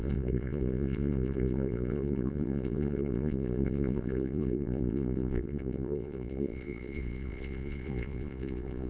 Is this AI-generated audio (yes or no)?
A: yes